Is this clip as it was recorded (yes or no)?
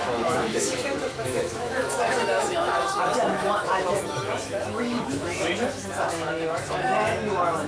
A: no